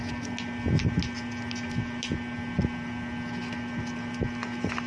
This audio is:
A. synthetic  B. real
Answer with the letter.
B